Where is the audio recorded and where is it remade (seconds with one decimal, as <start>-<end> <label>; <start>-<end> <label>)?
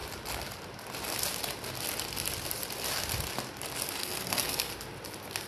0.0-4.0 recorded; 4.0-4.7 remade; 4.7-5.5 recorded